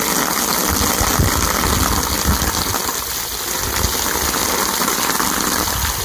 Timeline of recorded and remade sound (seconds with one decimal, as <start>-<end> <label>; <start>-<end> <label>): 0.0-6.0 recorded